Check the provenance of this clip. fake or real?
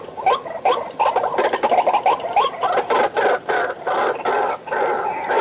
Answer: real